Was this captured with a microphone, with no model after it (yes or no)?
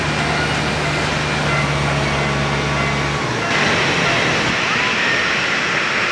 yes